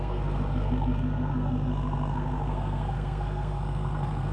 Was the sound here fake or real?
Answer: fake